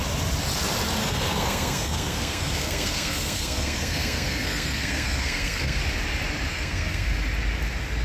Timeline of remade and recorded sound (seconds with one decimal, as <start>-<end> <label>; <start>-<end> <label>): 0.0-1.0 recorded; 1.0-5.8 remade; 5.8-6.5 recorded; 6.5-7.1 remade; 7.1-8.0 recorded